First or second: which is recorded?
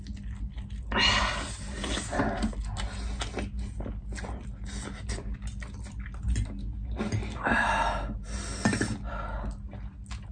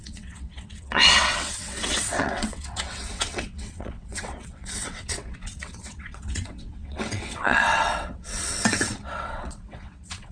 first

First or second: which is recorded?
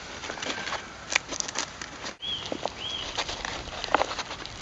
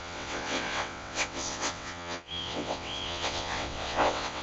first